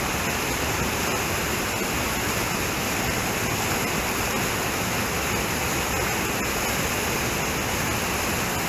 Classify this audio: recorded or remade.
recorded